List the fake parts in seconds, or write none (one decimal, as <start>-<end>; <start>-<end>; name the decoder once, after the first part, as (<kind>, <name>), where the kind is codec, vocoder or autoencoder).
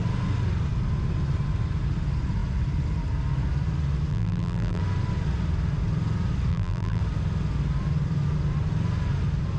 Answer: 4.1-4.8 (vocoder, BigVGAN v2); 6.5-7.0